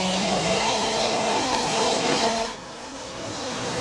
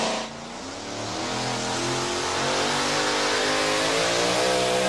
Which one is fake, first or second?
first